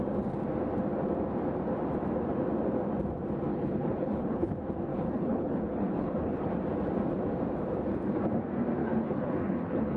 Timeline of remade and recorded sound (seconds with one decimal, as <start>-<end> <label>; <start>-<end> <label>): 0.0-3.5 recorded; 3.5-4.5 remade; 4.5-4.9 recorded; 4.9-6.5 remade; 6.5-8.8 recorded; 8.8-10.0 remade